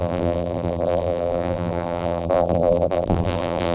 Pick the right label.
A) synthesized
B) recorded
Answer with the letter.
A